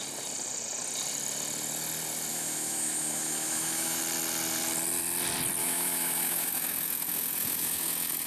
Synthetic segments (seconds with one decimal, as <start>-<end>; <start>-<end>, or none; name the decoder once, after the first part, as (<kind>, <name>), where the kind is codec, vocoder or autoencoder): 2.3-4.0 (autoencoder, DAC-VAE); 5.6-8.3

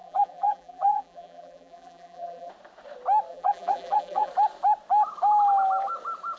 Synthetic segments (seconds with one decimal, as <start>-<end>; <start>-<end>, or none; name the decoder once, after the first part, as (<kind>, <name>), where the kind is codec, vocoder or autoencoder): 0.0-2.5 (vocoder, BigVGAN v2); 3.3-4.3

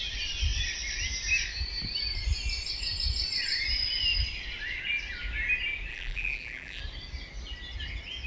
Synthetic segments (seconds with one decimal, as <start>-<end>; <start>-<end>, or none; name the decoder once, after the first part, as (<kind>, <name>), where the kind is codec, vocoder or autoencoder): 5.9-6.8 (vocoder, BigVGAN v2)